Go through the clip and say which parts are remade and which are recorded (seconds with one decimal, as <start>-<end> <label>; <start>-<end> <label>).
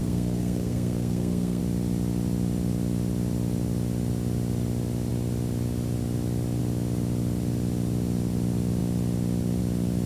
0.0-1.6 remade; 1.6-10.1 recorded